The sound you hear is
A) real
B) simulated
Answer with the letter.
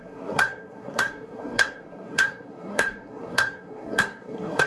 B